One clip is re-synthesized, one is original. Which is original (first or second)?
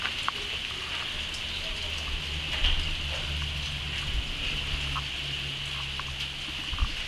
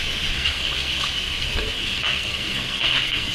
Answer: first